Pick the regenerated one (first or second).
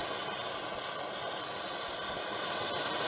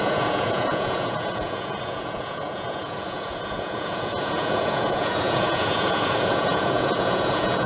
second